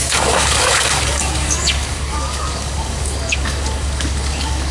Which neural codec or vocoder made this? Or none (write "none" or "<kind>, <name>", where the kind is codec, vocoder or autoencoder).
codec, DAC